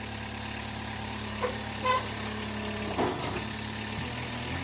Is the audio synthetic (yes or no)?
no